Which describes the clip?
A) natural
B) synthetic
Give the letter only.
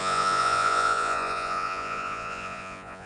B